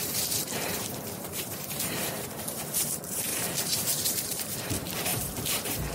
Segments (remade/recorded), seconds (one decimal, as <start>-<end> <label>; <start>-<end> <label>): 0.0-5.9 remade

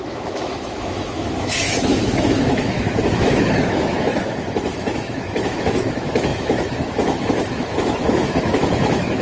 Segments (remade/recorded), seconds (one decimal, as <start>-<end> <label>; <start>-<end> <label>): 0.0-9.2 remade

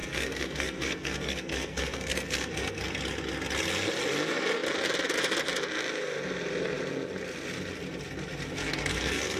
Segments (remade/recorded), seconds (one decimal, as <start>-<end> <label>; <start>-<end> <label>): 0.0-2.9 remade; 2.9-8.6 recorded; 8.6-9.4 remade

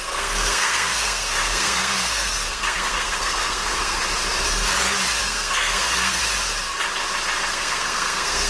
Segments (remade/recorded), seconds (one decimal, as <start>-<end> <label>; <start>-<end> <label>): 0.0-4.0 remade; 4.0-5.2 recorded; 5.2-6.2 remade; 6.2-7.5 recorded; 7.5-8.5 remade

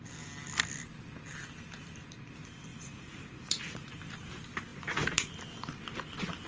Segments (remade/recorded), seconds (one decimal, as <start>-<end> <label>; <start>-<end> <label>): 0.0-2.7 recorded; 2.7-3.9 remade; 3.9-4.7 recorded; 4.7-5.3 remade; 5.3-6.5 recorded

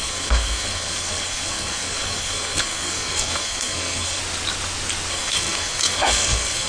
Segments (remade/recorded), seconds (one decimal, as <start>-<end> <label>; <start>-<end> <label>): 0.0-4.2 remade; 4.2-5.1 recorded; 5.1-6.7 remade

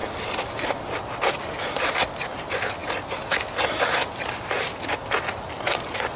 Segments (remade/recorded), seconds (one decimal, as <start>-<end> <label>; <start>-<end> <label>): 0.0-6.2 recorded